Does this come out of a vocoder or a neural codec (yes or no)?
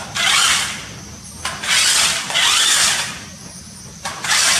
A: no